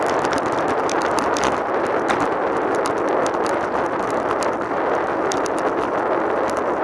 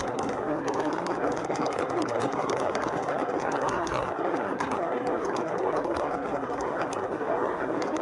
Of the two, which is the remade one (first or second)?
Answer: second